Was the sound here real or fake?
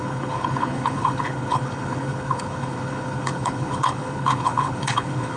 fake